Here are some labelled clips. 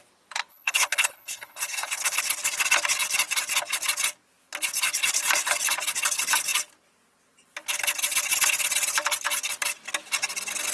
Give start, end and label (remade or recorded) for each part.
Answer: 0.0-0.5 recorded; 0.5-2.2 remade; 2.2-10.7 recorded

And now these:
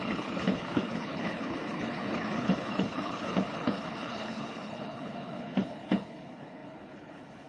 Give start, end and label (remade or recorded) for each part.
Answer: 0.0-7.5 remade

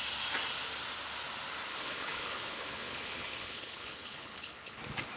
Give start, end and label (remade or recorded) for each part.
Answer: 0.0-1.7 recorded; 1.7-4.8 remade; 4.8-5.2 recorded

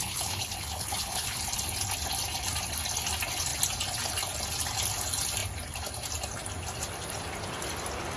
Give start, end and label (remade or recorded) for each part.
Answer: 0.0-1.4 remade; 1.4-8.2 recorded